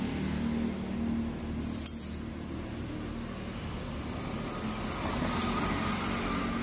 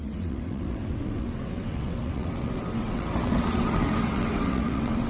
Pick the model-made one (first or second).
second